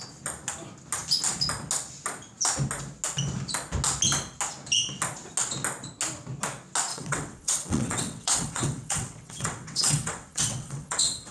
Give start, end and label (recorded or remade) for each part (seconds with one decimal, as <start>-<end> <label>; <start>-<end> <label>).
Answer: 0.0-6.9 recorded; 6.9-11.3 remade